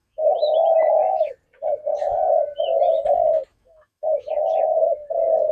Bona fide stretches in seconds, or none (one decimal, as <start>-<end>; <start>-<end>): 1.3-3.5; 4.4-5.5